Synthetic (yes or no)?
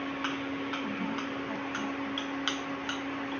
no